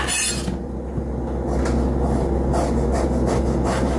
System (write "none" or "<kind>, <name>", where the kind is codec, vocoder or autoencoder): none